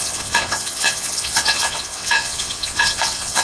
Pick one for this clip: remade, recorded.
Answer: remade